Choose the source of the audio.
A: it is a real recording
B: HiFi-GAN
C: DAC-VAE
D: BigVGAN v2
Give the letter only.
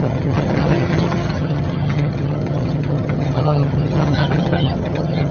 B